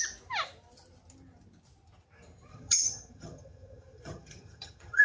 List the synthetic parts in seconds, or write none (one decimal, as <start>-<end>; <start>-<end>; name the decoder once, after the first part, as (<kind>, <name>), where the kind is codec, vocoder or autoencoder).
2.5-5.0 (vocoder, HiFi-GAN)

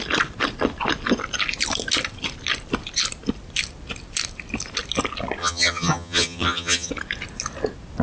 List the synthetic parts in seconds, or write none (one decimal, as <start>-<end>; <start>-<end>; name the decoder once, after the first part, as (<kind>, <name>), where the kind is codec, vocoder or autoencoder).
5.4-6.9 (vocoder, HiFi-GAN)

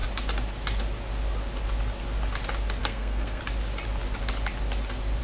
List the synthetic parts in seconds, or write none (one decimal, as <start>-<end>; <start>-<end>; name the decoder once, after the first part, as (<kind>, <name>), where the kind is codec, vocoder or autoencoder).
2.8-3.4 (codec, SNAC)

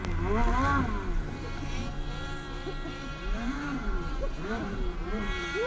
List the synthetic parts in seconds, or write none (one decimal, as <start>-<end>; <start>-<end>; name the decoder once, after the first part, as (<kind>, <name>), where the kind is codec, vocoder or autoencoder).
3.1-5.7 (vocoder, BigVGAN v2)